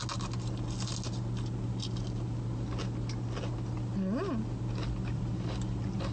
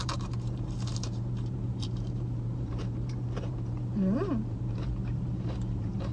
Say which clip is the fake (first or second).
second